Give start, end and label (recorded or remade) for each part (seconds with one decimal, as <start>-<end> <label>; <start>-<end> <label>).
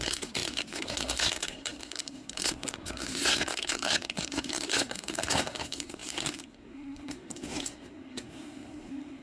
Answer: 0.0-9.2 remade